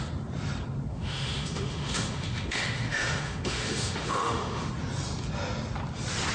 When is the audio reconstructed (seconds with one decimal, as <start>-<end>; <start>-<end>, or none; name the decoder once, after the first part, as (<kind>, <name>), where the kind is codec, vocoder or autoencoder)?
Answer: 0.9-4.7 (autoencoder, DAC-VAE)